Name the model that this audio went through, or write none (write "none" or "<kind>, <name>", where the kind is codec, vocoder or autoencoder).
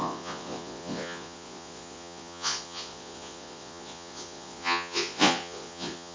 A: vocoder, Vocos